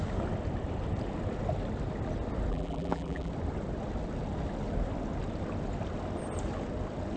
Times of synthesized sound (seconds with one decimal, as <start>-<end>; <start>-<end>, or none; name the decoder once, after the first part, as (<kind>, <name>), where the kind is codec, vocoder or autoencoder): 2.5-3.3 (vocoder, BigVGAN v2)